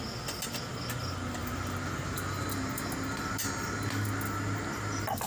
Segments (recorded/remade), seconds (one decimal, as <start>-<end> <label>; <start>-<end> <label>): 0.0-5.3 recorded